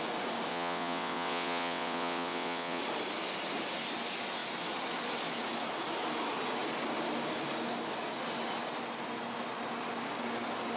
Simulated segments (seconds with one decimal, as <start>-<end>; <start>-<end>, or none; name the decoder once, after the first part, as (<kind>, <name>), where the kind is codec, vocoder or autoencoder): 0.5-2.8 (vocoder, WaveNeXt)